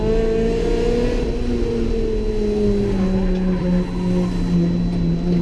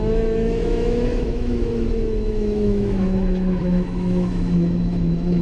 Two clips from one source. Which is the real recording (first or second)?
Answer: first